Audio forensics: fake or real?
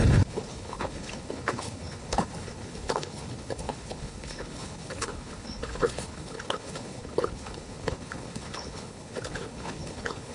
fake